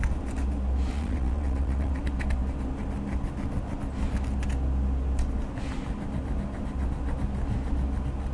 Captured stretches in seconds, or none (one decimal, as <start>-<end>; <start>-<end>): 0.0-0.9; 1.9-8.3